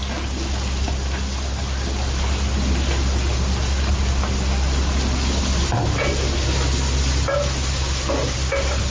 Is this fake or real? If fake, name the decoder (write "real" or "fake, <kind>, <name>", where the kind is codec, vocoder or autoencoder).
real